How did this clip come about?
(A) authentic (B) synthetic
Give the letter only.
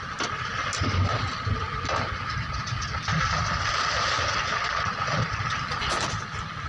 A